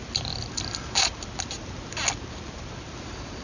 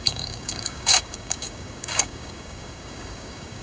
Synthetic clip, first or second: second